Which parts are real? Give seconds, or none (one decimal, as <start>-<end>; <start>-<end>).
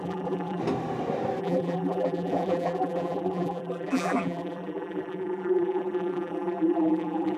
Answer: 0.6-1.4